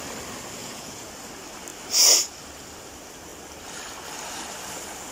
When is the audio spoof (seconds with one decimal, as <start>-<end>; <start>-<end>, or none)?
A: 0.6-1.1